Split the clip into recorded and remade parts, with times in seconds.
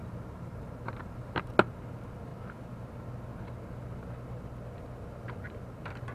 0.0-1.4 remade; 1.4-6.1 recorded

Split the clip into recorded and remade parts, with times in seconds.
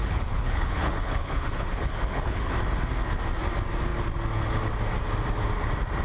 0.0-2.5 remade; 2.5-6.0 recorded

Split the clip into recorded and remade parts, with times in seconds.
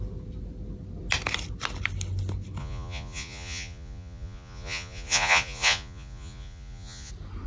0.0-2.6 recorded; 2.6-7.1 remade; 7.1-7.5 recorded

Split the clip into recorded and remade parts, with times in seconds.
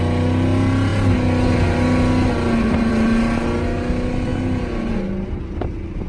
0.0-6.1 recorded